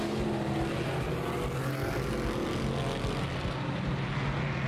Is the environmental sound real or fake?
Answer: real